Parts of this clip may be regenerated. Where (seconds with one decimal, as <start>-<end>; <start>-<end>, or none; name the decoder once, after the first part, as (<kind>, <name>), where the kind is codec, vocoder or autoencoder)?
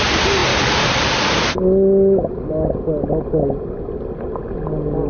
none